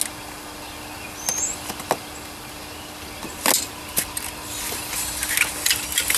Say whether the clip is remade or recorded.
recorded